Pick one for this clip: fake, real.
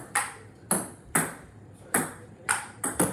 real